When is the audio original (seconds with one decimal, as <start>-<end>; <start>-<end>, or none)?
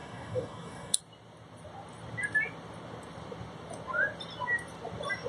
1.0-5.3